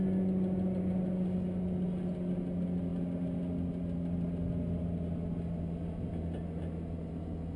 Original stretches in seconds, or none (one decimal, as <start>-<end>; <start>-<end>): 0.0-7.6